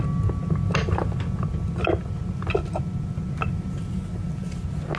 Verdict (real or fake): real